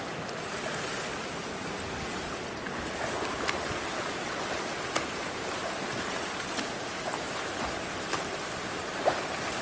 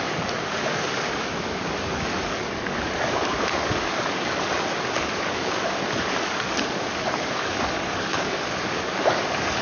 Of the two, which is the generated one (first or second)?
second